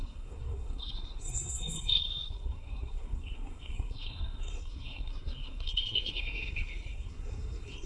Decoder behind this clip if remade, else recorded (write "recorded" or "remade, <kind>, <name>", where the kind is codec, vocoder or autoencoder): remade, codec, SNAC